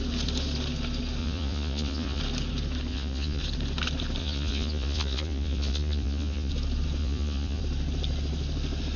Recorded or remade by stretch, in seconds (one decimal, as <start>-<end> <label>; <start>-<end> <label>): 0.0-1.2 recorded; 1.2-2.2 remade; 2.2-2.9 recorded; 2.9-3.4 remade; 3.4-4.2 recorded; 4.2-6.5 remade; 6.5-7.0 recorded; 7.0-7.6 remade; 7.6-9.0 recorded